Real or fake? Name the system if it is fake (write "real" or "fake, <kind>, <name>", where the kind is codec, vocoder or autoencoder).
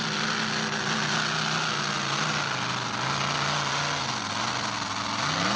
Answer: real